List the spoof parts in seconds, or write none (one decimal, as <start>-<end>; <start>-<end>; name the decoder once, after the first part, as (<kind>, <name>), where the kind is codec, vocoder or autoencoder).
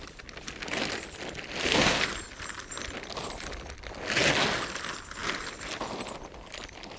1.6-2.1 (codec, SNAC)